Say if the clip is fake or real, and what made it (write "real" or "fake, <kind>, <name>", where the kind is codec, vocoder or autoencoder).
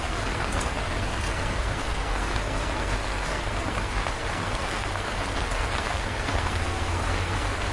fake, codec, SNAC